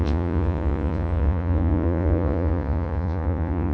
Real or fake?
fake